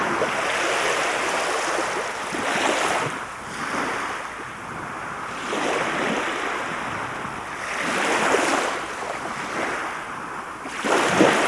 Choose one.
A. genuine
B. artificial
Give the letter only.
A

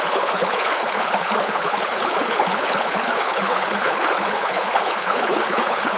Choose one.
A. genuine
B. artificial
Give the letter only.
B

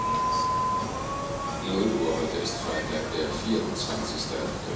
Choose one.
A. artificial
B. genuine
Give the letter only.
B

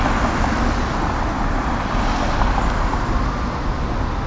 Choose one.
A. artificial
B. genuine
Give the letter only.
B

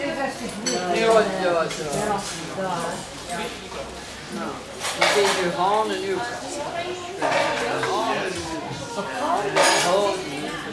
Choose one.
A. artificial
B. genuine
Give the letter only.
B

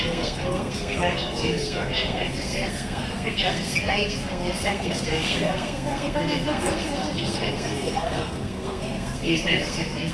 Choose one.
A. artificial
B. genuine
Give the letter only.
A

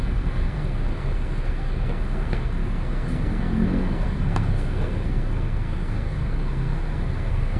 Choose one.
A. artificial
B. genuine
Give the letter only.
A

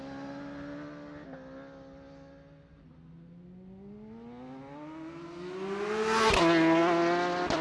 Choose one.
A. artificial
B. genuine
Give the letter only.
B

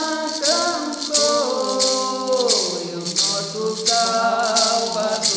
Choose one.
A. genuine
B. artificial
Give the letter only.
A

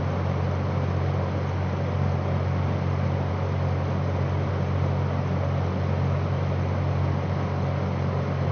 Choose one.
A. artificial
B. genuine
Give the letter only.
B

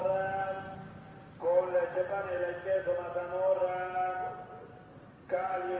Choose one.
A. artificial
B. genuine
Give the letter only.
B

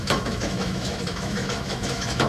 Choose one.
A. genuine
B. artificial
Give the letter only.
B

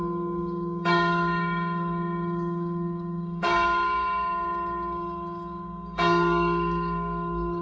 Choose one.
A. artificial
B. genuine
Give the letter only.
A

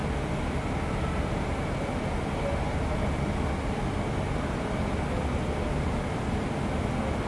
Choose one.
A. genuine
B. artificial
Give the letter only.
A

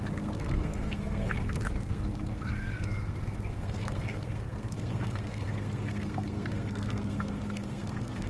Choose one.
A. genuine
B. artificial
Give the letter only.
B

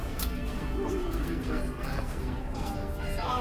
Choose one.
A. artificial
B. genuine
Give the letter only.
A